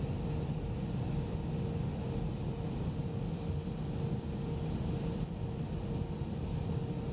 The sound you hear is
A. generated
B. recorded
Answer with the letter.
B